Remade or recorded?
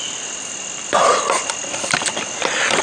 recorded